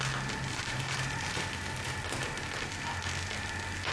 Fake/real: real